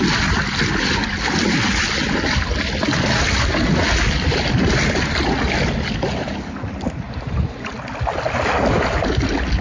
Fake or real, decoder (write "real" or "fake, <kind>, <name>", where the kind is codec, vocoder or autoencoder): real